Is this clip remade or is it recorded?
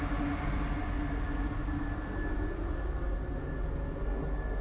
recorded